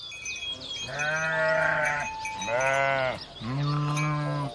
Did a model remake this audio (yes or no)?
no